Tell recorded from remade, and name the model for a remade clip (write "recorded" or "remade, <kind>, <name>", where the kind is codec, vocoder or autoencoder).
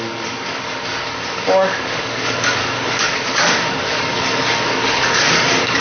remade, codec, DAC